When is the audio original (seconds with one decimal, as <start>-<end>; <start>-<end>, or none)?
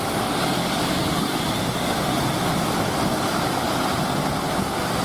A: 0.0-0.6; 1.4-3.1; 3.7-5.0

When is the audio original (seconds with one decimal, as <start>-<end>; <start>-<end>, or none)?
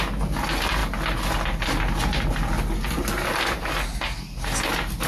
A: 0.0-5.1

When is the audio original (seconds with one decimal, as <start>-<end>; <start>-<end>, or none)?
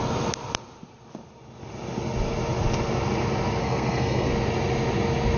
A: 0.0-3.6; 4.3-5.4